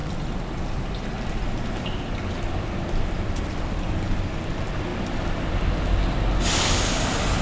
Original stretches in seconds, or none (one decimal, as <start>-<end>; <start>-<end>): 0.0-7.4